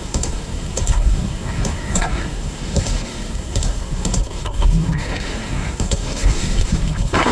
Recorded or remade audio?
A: remade